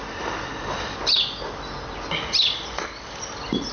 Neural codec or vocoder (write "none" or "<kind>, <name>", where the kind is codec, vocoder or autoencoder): none